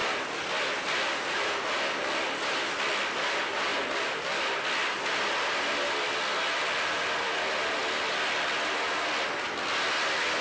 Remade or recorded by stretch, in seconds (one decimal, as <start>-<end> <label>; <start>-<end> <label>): 0.0-10.4 recorded